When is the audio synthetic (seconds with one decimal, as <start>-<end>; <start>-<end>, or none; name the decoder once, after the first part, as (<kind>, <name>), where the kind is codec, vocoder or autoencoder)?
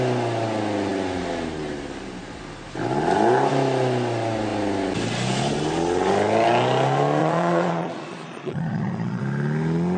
7.2-9.2 (vocoder, Vocos)